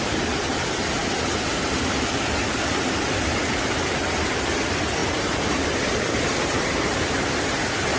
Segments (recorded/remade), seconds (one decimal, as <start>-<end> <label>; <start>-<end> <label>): 0.0-5.0 recorded; 5.0-7.5 remade; 7.5-8.0 recorded